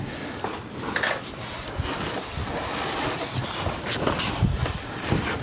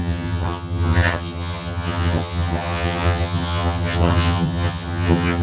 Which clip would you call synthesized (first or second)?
second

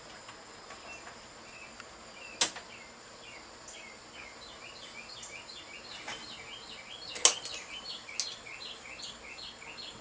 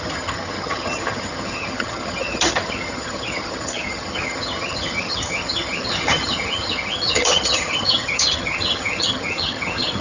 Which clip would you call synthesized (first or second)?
second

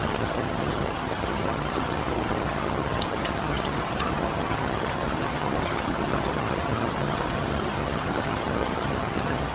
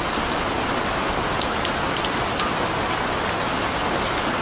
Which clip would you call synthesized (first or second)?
first